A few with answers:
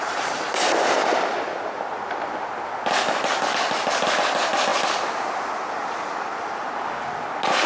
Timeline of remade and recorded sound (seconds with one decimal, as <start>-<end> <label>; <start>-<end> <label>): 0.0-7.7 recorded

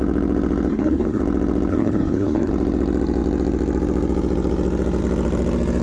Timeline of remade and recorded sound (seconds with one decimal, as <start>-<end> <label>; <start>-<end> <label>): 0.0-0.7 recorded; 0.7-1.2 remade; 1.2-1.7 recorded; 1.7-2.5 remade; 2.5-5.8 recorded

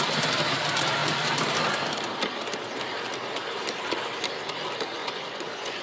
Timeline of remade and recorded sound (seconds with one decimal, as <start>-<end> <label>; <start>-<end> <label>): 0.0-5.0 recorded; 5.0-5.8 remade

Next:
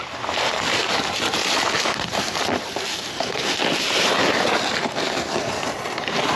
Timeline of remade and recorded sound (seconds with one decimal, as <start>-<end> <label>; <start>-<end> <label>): 0.0-0.4 recorded; 0.4-0.9 remade; 0.9-1.8 recorded; 1.8-2.4 remade; 2.4-2.9 recorded; 2.9-3.6 remade; 3.6-4.8 recorded; 4.8-5.5 remade; 5.5-6.4 recorded

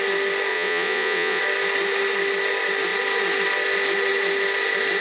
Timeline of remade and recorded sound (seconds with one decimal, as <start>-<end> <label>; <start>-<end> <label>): 0.0-0.5 recorded; 0.5-1.4 remade; 1.4-5.0 recorded